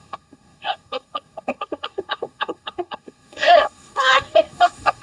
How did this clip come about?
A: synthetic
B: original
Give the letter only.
A